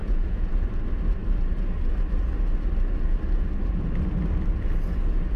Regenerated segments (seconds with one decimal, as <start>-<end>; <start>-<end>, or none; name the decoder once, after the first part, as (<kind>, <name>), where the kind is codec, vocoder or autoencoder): 0.0-0.5 (vocoder, Vocos)